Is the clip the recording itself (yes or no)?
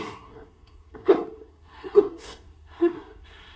no